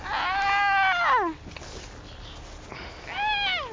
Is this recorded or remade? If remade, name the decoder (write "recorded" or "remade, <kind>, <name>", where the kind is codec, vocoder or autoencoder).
recorded